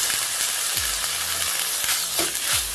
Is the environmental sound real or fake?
real